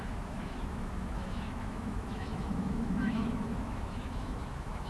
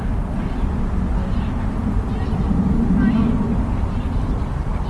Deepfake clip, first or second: first